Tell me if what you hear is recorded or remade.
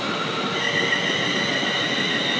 recorded